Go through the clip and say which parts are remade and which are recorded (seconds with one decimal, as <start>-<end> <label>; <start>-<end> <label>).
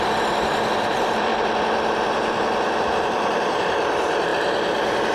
0.0-1.3 remade; 1.3-2.1 recorded; 2.1-4.3 remade; 4.3-5.1 recorded